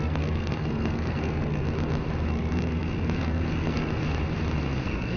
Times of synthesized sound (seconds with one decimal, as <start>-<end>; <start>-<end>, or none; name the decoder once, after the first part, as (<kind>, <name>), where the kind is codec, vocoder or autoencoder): 0.0-1.6 (codec, SNAC); 2.3-4.0; 4.8-5.2